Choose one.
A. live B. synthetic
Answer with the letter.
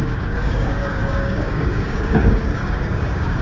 B